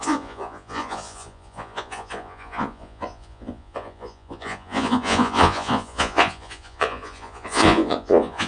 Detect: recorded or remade remade